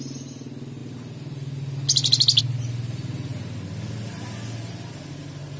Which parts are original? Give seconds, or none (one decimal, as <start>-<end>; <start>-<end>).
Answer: 0.0-5.6